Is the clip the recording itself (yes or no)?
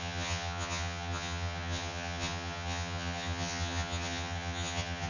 no